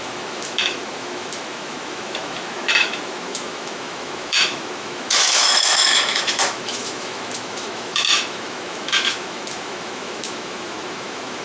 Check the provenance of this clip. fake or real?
fake